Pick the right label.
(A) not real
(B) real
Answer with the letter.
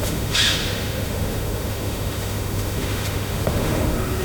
A